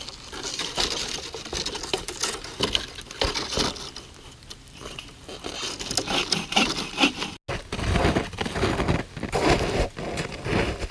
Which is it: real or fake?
real